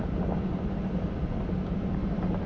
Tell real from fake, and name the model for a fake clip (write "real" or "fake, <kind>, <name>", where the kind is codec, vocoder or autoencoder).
real